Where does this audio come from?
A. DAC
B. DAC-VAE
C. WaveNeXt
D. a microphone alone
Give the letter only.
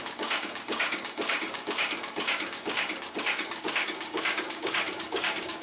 A